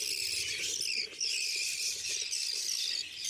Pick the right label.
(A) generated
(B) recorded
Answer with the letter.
B